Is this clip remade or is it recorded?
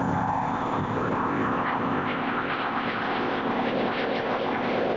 remade